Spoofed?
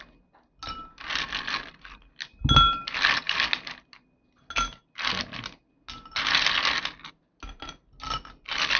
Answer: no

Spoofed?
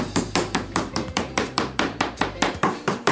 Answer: yes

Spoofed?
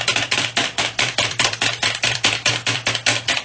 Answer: yes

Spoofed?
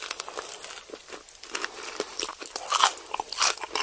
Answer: yes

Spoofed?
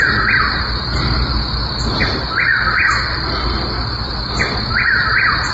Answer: no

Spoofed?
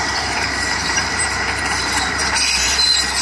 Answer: yes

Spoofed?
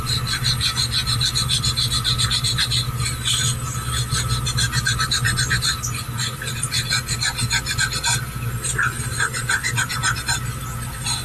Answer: no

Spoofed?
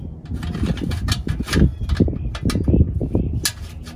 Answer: no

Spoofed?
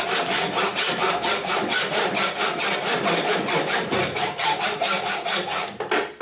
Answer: no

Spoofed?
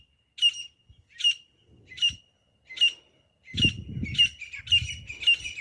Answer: no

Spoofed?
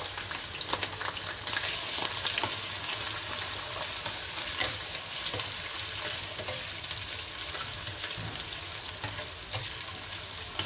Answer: no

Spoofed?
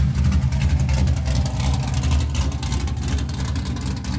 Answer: no